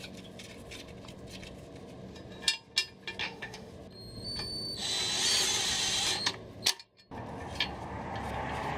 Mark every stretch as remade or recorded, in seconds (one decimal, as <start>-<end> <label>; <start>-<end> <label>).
0.0-3.2 recorded; 3.2-3.7 remade; 3.7-8.8 recorded